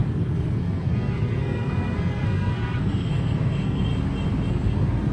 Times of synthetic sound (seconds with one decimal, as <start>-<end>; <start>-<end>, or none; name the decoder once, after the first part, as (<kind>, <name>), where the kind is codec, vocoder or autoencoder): 0.0-3.9 (codec, SNAC); 4.5-5.1